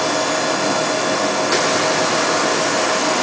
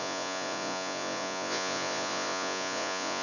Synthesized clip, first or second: second